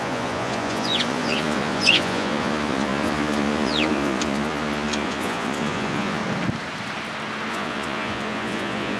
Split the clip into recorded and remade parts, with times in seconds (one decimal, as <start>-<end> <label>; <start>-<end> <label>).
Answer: 0.0-6.2 remade; 6.2-7.5 recorded; 7.5-9.0 remade